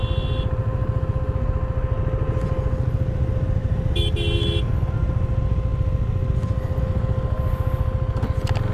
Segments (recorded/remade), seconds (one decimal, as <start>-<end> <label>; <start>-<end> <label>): 0.0-8.7 recorded